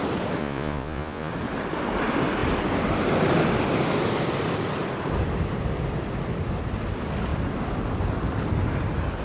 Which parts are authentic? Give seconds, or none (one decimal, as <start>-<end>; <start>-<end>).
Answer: 0.0-0.4; 1.3-9.2